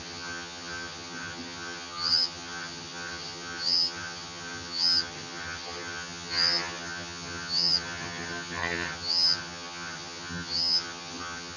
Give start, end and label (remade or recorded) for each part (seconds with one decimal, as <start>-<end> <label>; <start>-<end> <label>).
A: 0.0-11.6 remade